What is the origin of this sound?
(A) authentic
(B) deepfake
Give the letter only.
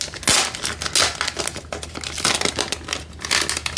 A